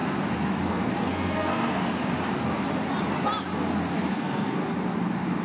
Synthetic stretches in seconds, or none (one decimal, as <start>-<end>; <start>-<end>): 0.7-1.8; 4.1-4.6